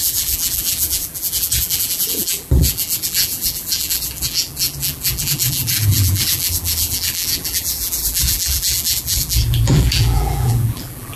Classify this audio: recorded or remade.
remade